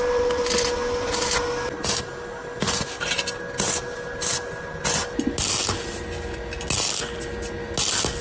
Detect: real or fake real